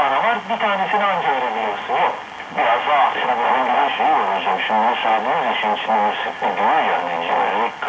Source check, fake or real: real